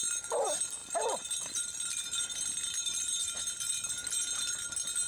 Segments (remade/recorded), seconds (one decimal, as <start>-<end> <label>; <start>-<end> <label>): 0.0-0.8 recorded; 0.8-3.9 remade; 3.9-5.1 recorded